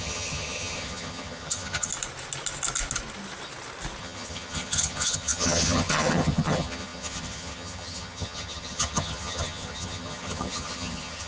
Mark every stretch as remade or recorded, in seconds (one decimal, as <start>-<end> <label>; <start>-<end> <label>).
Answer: 0.0-1.9 remade; 1.9-4.0 recorded; 4.0-11.3 remade

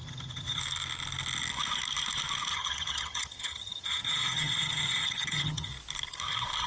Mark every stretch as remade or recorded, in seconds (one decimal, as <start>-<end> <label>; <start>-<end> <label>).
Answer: 0.0-0.6 remade; 0.6-2.5 recorded; 2.5-5.7 remade; 5.7-6.7 recorded

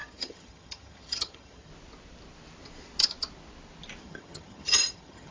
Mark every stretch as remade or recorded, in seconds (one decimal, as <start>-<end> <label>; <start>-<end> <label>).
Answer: 0.0-1.7 remade; 1.7-4.0 recorded; 4.0-5.3 remade

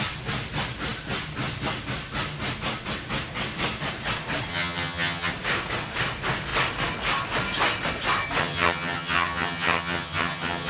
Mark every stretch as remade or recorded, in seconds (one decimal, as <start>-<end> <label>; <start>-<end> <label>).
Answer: 0.0-4.5 recorded; 4.5-5.3 remade; 5.3-8.4 recorded; 8.4-10.7 remade

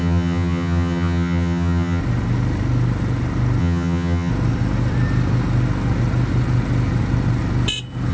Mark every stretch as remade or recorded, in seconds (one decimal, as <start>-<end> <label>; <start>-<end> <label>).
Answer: 0.0-2.0 remade; 2.0-3.6 recorded; 3.6-4.3 remade; 4.3-8.1 recorded

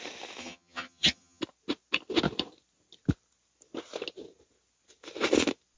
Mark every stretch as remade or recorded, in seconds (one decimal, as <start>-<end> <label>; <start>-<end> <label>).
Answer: 0.0-0.4 recorded; 0.4-1.4 remade; 1.4-5.8 recorded